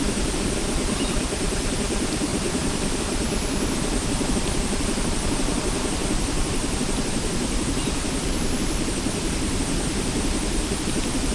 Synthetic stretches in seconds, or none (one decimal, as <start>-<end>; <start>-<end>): 2.3-3.0; 6.0-9.6